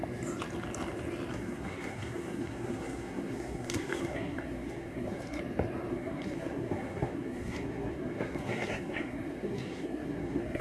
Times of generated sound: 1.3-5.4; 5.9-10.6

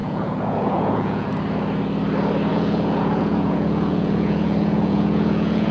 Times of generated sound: 0.0-1.3; 2.5-5.7

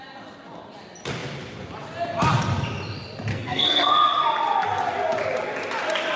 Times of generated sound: 3.3-3.9

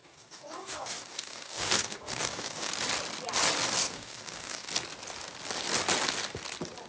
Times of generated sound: 0.0-2.7; 3.8-4.7

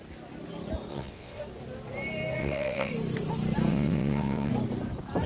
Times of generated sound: 0.9-1.4; 2.4-2.9; 3.7-4.5

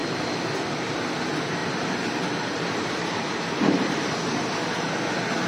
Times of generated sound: 1.6-4.9